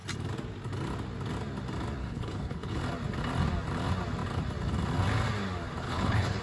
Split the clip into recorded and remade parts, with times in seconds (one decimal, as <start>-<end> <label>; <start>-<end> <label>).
0.0-2.0 recorded; 2.0-2.8 remade; 2.8-5.8 recorded; 5.8-6.4 remade